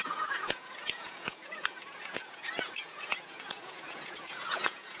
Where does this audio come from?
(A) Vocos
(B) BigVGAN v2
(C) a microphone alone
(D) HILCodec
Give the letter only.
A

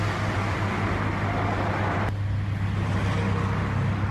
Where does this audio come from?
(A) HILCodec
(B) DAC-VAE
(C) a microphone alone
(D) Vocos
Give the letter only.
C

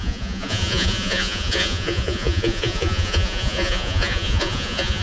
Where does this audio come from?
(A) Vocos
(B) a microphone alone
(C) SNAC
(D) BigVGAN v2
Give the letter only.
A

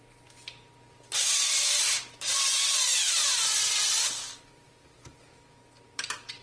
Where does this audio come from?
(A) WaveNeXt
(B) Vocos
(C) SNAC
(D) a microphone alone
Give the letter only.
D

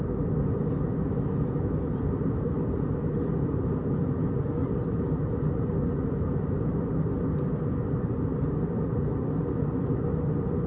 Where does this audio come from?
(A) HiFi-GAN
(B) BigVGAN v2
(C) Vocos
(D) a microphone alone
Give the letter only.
D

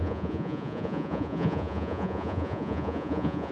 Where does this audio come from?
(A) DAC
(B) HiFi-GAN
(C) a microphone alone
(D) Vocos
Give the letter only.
D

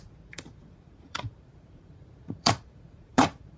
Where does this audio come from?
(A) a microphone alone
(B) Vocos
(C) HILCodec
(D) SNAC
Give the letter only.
B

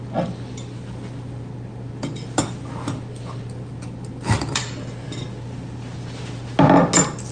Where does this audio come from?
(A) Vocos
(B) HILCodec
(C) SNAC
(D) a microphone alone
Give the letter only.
D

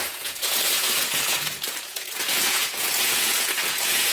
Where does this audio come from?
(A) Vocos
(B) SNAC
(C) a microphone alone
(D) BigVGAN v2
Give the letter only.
A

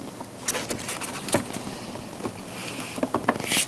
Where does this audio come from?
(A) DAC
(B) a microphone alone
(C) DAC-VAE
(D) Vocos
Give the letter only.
B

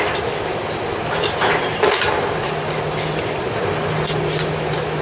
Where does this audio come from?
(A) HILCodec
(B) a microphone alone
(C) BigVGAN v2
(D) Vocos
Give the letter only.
B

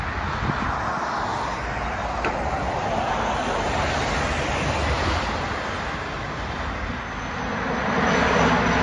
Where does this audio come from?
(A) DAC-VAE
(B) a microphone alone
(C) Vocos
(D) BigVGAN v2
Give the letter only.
B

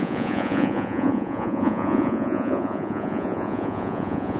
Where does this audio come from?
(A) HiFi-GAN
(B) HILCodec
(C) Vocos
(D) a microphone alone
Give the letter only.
C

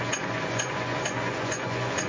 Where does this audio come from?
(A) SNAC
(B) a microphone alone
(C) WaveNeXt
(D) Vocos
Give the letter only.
D